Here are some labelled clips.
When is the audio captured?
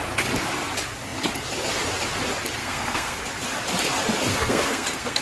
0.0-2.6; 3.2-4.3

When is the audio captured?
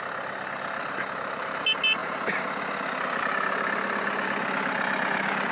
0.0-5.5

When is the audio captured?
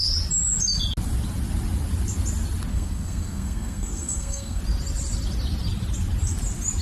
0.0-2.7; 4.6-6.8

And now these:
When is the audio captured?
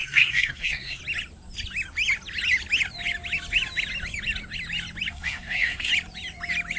1.0-5.1; 5.9-6.8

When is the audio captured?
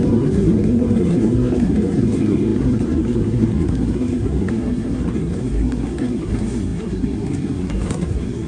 none